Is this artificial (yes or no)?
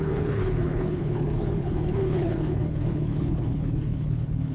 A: yes